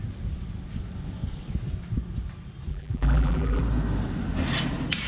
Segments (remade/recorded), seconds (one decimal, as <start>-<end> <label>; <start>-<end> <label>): 0.0-2.7 recorded; 2.7-3.6 remade; 3.6-5.1 recorded